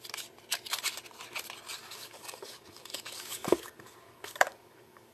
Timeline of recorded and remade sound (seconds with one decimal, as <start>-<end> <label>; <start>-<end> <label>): 0.0-1.8 recorded; 1.8-5.1 remade